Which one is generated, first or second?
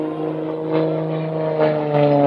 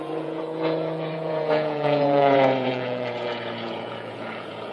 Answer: second